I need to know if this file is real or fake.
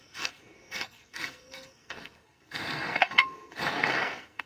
fake